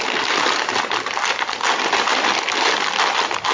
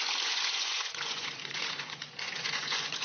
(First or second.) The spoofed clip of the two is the second